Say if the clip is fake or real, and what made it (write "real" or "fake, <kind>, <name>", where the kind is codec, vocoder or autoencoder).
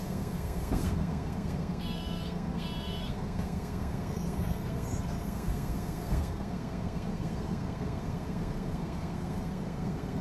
fake, codec, SNAC